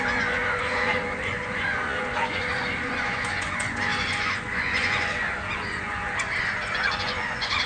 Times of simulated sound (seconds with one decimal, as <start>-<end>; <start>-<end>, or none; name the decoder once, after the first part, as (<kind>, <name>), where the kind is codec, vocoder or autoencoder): 0.0-7.7 (vocoder, Vocos)